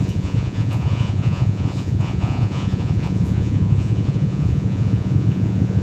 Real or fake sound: fake